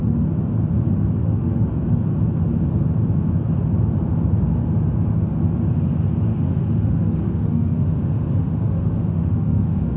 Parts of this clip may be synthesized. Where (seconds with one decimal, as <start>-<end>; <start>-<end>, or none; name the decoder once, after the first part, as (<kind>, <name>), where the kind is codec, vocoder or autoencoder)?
1.2-1.7 (autoencoder, DAC-VAE); 6.3-10.0